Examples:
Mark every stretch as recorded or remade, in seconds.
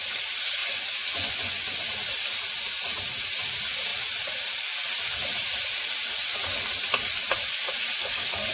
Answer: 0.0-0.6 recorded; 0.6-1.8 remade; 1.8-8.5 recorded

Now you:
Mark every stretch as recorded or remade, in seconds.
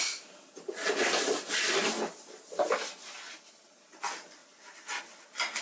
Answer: 0.0-5.6 recorded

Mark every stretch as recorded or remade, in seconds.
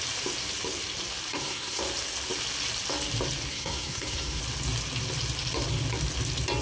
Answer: 0.0-1.3 recorded; 1.3-1.8 remade; 1.8-3.5 recorded; 3.5-4.4 remade; 4.4-6.6 recorded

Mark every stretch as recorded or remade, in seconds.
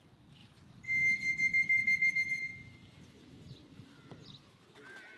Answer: 0.0-1.8 recorded; 1.8-4.5 remade; 4.5-5.2 recorded